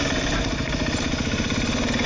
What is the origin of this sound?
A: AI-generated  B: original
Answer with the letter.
B